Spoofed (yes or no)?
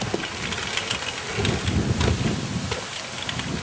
no